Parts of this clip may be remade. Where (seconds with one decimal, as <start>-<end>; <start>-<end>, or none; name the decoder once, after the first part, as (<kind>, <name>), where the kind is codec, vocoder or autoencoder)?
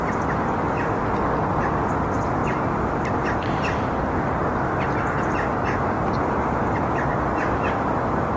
2.4-3.0 (vocoder, BigVGAN v2)